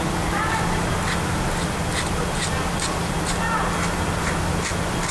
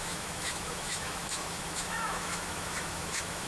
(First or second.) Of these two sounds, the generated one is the second